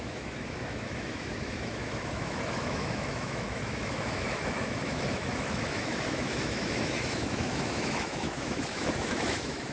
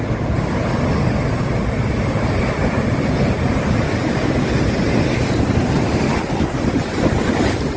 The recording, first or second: second